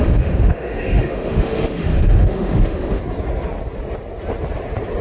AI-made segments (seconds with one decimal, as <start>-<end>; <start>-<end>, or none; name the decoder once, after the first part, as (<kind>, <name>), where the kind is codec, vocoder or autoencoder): 0.0-3.0 (autoencoder, DAC-VAE)